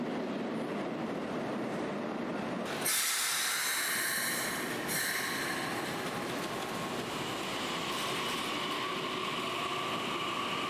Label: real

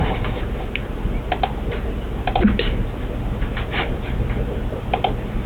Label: real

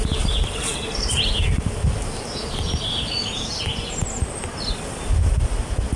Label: real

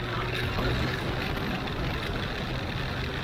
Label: real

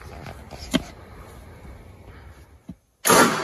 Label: real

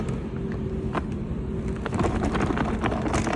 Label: real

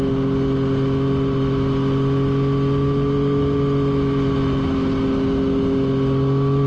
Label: real